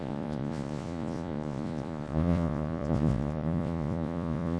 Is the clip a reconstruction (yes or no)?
yes